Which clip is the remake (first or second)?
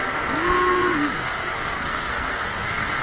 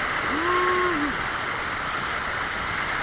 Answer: first